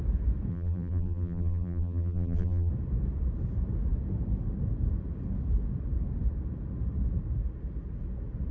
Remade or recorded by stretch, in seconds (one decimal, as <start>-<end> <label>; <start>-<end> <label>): 0.0-0.5 recorded; 0.5-2.7 remade; 2.7-8.5 recorded